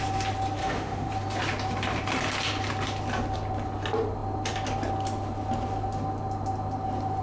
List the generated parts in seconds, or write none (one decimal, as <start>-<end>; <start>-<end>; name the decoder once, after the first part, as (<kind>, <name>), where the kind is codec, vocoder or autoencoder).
0.6-1.1 (autoencoder, DAC-VAE)